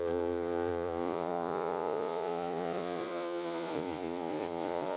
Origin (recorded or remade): remade